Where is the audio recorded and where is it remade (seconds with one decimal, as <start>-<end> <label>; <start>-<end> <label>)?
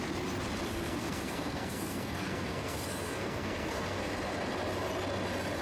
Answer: 0.0-0.7 recorded; 0.7-4.1 remade; 4.1-5.6 recorded